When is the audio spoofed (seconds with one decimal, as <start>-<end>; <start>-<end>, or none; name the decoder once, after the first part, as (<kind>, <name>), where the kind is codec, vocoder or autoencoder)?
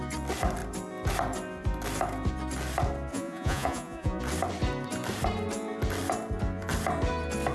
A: 3.1-4.2 (vocoder, Vocos)